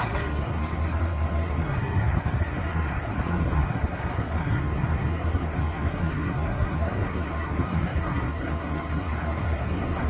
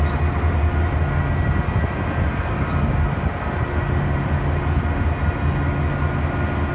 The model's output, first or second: first